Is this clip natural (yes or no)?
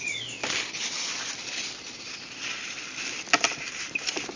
no